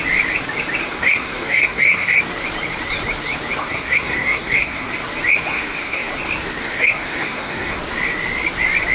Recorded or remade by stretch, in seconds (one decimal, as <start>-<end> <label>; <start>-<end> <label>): 0.0-0.8 recorded; 0.8-2.2 remade; 2.2-3.6 recorded; 3.6-4.9 remade; 4.9-5.5 recorded; 5.5-6.1 remade; 6.1-6.6 recorded; 6.6-7.8 remade; 7.8-8.9 recorded